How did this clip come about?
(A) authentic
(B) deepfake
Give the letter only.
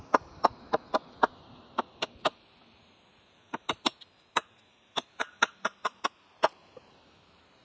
B